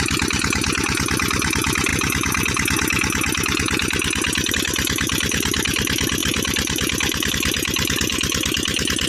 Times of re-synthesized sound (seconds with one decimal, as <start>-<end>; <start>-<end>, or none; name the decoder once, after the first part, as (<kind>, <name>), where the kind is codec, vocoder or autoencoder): none